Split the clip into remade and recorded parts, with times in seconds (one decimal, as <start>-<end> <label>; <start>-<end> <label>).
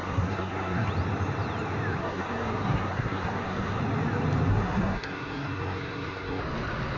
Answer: 0.0-0.9 remade; 0.9-2.0 recorded; 2.0-3.8 remade; 3.8-4.5 recorded; 4.5-6.4 remade; 6.4-7.0 recorded